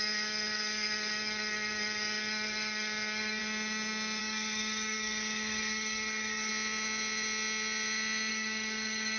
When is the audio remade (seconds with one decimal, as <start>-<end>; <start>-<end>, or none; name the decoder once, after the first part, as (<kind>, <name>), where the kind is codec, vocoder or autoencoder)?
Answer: 0.0-3.4 (codec, DAC); 4.2-6.5; 8.3-9.2

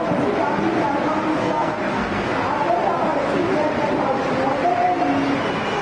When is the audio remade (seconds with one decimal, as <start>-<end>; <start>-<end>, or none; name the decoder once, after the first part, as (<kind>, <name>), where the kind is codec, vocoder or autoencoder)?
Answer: 1.3-2.4 (codec, SNAC)

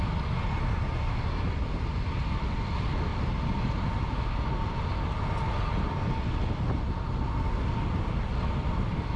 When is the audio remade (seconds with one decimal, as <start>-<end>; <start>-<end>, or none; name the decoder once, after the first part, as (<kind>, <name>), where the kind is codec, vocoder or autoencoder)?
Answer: none

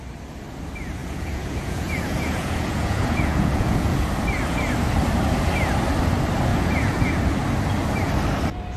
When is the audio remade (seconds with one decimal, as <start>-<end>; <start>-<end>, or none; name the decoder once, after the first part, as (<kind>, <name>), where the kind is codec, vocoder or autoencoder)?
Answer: 1.0-4.0 (vocoder, Vocos); 6.5-7.3

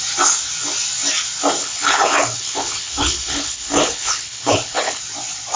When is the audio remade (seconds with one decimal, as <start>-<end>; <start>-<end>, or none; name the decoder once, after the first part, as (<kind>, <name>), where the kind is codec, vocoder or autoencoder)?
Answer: 1.6-5.0 (codec, HILCodec)

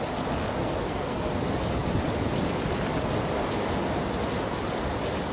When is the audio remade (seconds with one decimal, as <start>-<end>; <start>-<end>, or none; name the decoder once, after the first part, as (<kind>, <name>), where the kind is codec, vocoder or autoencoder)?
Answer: 0.6-1.3 (codec, SNAC)

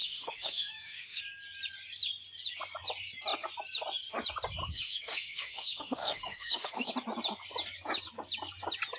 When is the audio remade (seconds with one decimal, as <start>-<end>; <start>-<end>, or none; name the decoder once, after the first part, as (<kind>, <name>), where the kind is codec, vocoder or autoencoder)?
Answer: 0.0-1.2 (autoencoder, DAC-VAE); 4.6-6.9